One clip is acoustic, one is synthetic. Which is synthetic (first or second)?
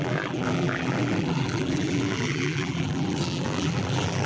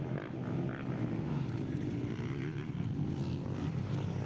first